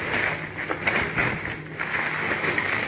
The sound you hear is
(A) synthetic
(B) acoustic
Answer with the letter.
B